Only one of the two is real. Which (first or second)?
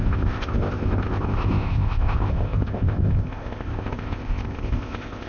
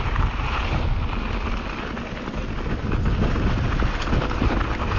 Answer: second